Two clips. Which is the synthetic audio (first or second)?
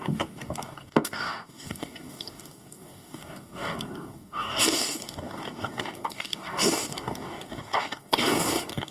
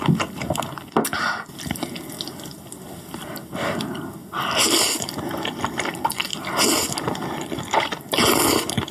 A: first